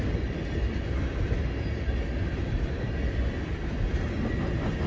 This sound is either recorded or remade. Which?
recorded